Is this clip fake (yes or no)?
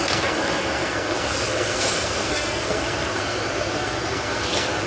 yes